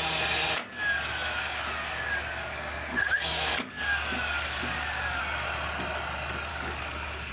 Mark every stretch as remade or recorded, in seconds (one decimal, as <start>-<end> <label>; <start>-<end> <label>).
0.0-0.8 recorded; 0.8-5.2 remade; 5.2-6.5 recorded; 6.5-7.3 remade